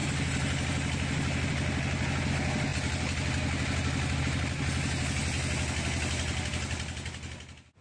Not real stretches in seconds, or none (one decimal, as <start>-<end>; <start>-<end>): none